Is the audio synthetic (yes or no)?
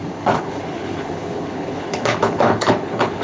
yes